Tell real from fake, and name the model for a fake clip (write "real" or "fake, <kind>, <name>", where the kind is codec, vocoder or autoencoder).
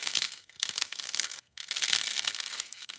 fake, codec, SNAC